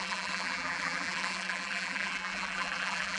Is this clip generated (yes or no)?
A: yes